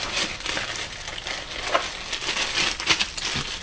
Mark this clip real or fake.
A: real